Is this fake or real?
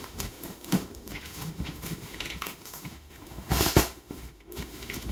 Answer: fake